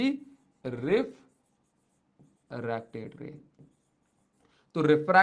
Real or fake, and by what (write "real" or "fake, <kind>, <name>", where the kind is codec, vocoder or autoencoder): real